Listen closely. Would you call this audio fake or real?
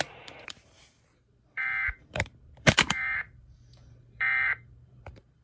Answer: fake